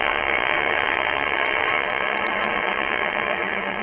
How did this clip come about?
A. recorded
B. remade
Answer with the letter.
B